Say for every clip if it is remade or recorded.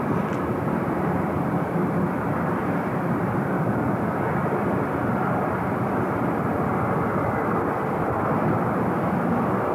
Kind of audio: remade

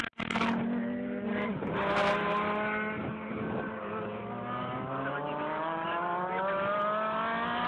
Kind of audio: recorded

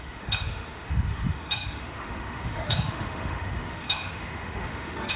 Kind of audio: remade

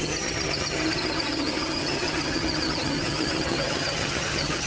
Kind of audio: remade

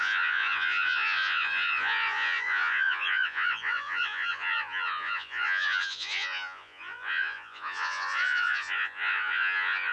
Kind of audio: remade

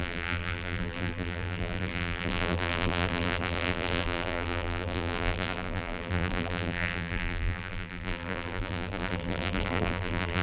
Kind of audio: remade